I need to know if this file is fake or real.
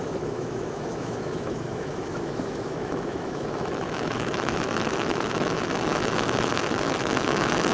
fake